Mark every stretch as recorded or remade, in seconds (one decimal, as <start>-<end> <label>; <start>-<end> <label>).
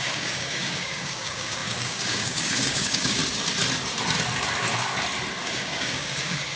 0.0-3.2 remade; 3.2-5.4 recorded; 5.4-6.6 remade